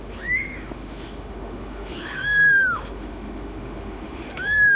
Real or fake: fake